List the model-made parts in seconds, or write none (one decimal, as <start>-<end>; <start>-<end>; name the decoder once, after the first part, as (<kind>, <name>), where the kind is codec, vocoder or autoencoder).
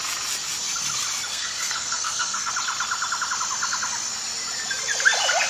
1.3-2.5 (codec, SNAC)